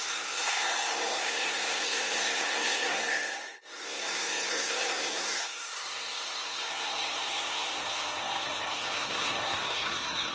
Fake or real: fake